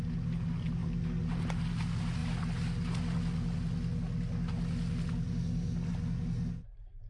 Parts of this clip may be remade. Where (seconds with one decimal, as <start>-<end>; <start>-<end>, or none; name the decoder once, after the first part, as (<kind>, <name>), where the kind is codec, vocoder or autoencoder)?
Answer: none